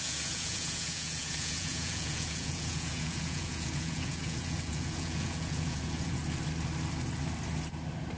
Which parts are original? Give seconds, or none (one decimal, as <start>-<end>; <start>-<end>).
6.2-8.2